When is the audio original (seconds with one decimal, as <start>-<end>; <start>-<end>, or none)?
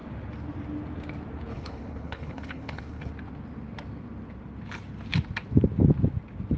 0.0-1.5; 3.1-6.6